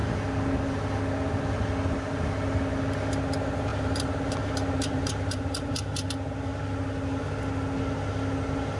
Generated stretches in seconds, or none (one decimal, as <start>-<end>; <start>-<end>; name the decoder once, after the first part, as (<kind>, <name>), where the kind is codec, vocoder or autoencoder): 3.7-6.1 (vocoder, BigVGAN v2)